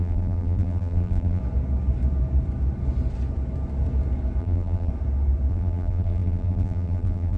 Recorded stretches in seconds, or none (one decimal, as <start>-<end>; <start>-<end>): 1.4-4.4; 4.9-5.5

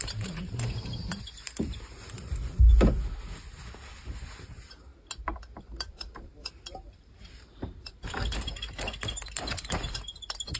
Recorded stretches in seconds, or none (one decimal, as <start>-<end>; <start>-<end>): 2.4-4.2; 4.9-5.6

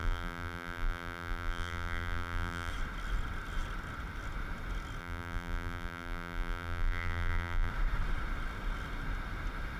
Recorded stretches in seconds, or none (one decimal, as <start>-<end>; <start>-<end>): 2.7-5.0; 7.7-9.8